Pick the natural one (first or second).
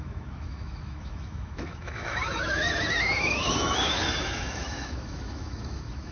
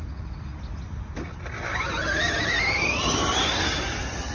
second